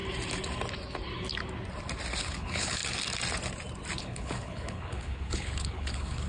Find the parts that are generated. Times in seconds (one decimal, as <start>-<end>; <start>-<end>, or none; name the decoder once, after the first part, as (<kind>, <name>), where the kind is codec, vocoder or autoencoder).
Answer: 2.2-2.8 (codec, HILCodec); 4.0-6.3